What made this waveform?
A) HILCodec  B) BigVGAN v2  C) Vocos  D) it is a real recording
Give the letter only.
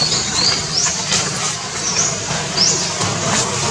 D